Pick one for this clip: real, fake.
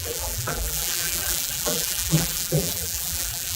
fake